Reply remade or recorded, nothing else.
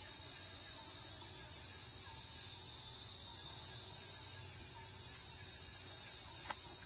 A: remade